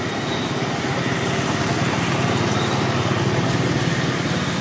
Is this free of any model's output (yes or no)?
yes